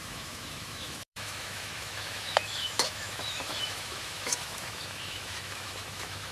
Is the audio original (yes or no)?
no